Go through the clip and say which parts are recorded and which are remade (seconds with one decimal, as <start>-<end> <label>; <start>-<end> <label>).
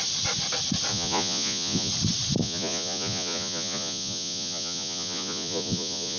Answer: 0.0-0.9 recorded; 0.9-1.9 remade; 1.9-2.4 recorded; 2.4-6.2 remade